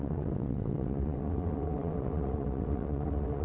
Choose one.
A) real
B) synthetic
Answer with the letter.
B